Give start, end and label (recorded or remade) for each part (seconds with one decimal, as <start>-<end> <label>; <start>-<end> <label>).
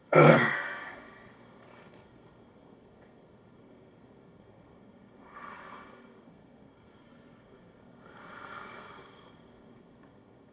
0.0-10.5 remade